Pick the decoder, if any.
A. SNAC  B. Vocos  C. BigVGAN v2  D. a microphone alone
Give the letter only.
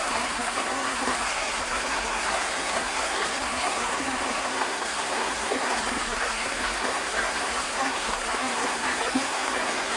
A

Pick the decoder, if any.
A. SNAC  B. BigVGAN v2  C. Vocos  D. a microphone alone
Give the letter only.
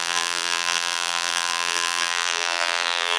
B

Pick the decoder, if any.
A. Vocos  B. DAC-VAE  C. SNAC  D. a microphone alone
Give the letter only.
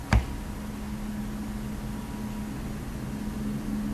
D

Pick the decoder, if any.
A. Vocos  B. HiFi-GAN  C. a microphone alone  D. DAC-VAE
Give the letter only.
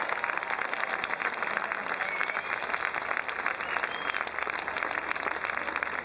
C